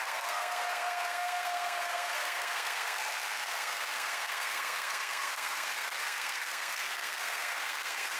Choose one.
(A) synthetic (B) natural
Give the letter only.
A